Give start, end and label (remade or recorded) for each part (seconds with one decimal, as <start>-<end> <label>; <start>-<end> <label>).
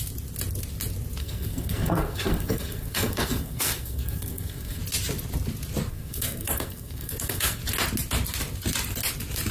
0.0-1.2 recorded; 1.2-4.8 remade; 4.8-5.9 recorded; 5.9-7.6 remade; 7.6-9.5 recorded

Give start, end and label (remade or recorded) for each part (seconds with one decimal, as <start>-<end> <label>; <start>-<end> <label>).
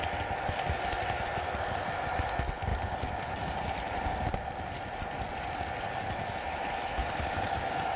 0.0-2.7 recorded; 2.7-4.6 remade; 4.6-7.0 recorded; 7.0-7.6 remade; 7.6-8.0 recorded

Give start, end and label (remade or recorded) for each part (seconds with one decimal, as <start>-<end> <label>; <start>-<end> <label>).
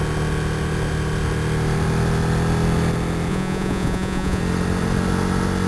0.0-3.3 recorded; 3.3-4.4 remade; 4.4-5.7 recorded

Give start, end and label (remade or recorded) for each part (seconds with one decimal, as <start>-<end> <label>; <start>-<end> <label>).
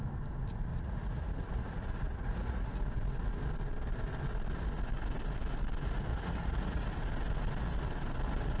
0.0-0.7 recorded; 0.7-2.8 remade; 2.8-6.1 recorded; 6.1-6.8 remade; 6.8-8.6 recorded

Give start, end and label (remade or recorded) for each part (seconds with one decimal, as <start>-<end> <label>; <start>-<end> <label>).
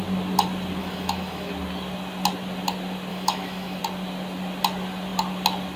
0.0-0.8 recorded; 0.8-1.5 remade; 1.5-3.1 recorded; 3.1-3.8 remade; 3.8-5.8 recorded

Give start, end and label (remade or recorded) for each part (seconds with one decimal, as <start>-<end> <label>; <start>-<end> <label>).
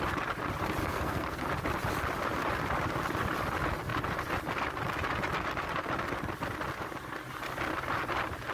0.0-0.8 recorded; 0.8-1.5 remade; 1.5-8.5 recorded